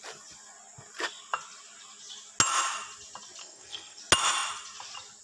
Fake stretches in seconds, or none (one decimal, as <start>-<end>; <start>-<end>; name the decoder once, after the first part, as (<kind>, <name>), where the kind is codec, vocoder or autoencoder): 3.4-4.0 (codec, SNAC)